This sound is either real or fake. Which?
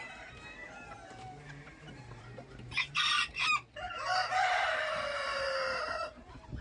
fake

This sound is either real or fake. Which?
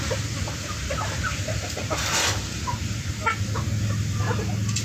real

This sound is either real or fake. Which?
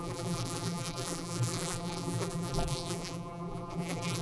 fake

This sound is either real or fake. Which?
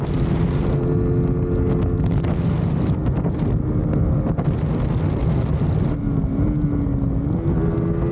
real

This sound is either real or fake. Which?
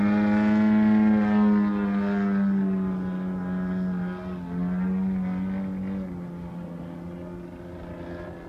real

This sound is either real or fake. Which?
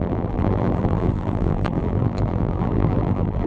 fake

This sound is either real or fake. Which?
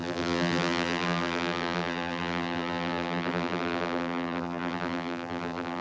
fake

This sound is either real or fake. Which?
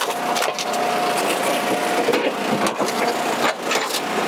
real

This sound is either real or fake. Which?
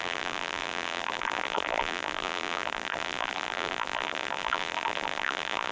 fake